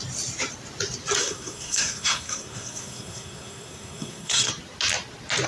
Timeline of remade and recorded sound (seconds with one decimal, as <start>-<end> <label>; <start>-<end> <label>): 0.0-1.2 recorded; 1.2-4.5 remade; 4.5-5.5 recorded